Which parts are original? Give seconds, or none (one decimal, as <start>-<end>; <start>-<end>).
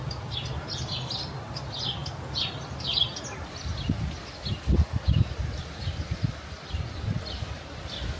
1.3-5.6